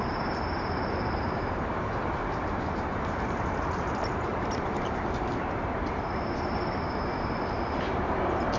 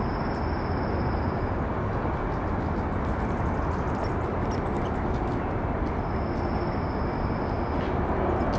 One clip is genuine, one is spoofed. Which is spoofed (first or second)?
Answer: first